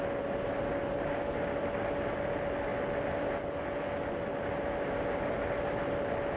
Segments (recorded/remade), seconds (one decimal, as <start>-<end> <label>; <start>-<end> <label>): 0.0-6.4 recorded